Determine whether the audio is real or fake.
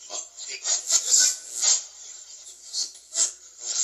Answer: real